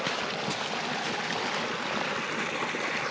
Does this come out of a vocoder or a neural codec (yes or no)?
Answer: no